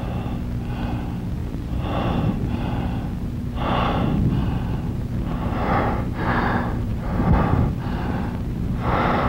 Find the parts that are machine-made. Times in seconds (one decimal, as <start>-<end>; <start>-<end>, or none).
1.4-2.7; 6.9-8.8